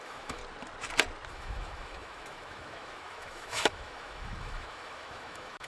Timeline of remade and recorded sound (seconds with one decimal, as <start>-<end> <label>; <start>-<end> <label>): 0.0-0.4 remade; 0.4-1.3 recorded; 1.3-5.7 remade